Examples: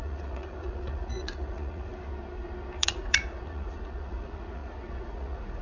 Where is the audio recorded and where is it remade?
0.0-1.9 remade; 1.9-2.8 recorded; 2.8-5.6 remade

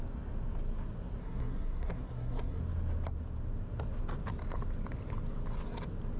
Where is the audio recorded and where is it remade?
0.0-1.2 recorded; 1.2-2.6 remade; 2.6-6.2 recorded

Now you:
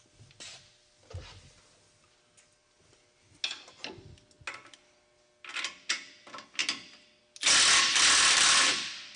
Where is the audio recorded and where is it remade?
0.0-9.2 recorded

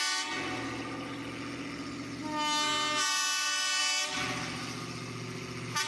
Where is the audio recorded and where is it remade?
0.0-5.9 recorded

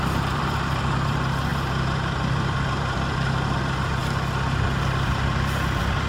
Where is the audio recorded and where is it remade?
0.0-4.0 remade; 4.0-4.8 recorded; 4.8-6.1 remade

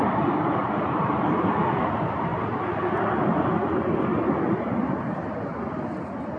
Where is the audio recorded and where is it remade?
0.0-0.6 recorded; 0.6-1.5 remade; 1.5-6.4 recorded

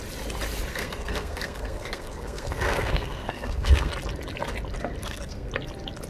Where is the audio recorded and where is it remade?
0.0-0.7 recorded; 0.7-3.9 remade; 3.9-5.0 recorded; 5.0-5.5 remade; 5.5-6.1 recorded